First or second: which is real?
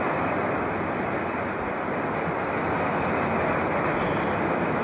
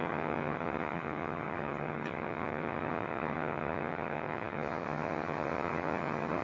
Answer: first